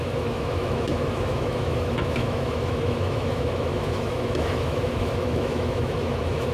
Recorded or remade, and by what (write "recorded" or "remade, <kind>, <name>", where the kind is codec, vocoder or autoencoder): remade, autoencoder, DAC-VAE